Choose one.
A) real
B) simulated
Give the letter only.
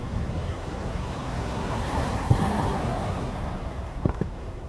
B